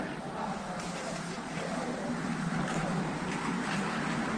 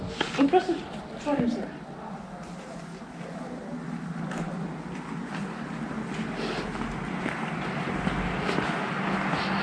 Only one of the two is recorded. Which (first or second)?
second